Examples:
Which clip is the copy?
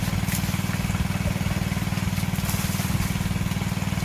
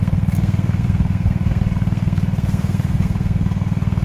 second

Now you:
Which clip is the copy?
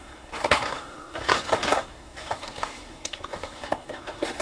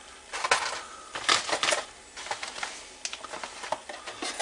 first